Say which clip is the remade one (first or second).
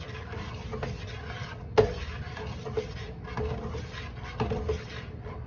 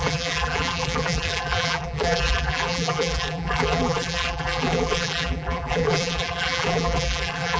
second